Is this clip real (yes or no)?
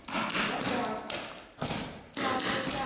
yes